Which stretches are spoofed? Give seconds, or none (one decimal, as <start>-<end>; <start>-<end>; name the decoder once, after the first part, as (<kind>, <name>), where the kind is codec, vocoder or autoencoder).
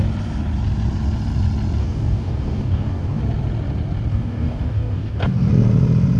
1.8-3.2 (codec, DAC); 4.1-5.5